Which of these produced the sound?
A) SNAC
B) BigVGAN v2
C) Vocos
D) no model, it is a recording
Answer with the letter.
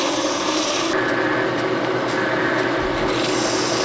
D